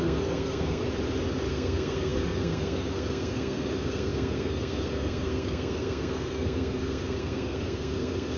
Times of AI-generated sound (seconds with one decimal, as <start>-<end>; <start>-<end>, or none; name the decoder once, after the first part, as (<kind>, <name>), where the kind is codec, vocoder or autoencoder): 0.0-0.8 (codec, SNAC); 1.5-8.4